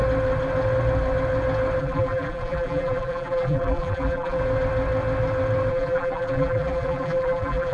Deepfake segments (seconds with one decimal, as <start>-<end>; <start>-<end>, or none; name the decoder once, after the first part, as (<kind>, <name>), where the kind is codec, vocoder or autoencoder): 1.8-4.4 (vocoder, BigVGAN v2); 5.7-7.7